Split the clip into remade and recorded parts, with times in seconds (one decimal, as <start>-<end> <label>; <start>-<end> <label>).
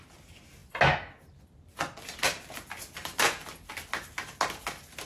0.0-5.1 recorded